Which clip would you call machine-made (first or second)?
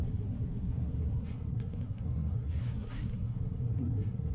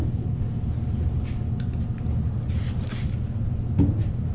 first